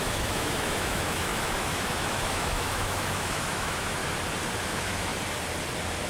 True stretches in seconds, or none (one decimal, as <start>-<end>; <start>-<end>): 4.0-4.6; 5.1-6.1